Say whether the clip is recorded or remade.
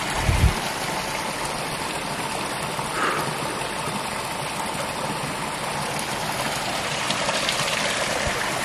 recorded